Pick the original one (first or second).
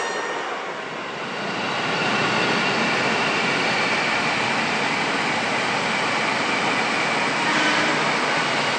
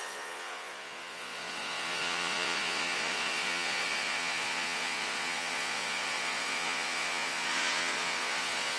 first